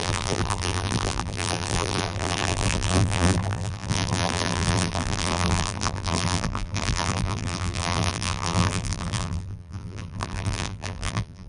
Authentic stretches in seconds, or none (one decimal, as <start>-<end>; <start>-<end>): none